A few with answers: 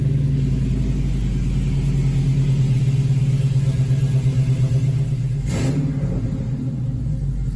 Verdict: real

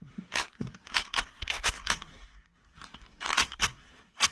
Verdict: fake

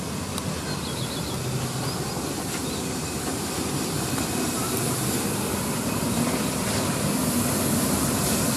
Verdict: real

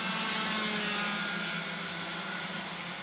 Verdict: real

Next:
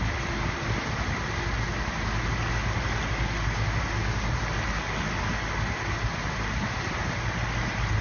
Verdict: real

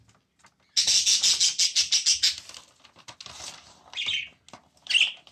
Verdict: real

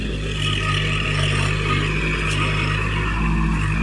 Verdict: real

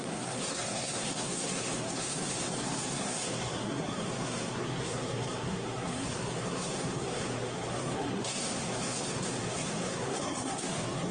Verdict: fake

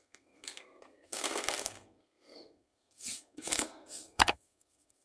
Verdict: fake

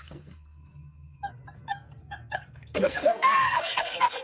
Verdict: fake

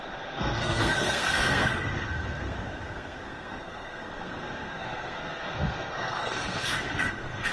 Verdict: fake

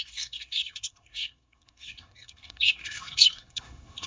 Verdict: fake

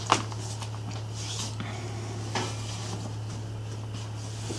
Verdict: real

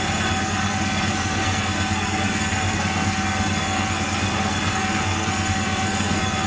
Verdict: fake